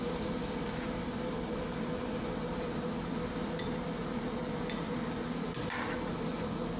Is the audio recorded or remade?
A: recorded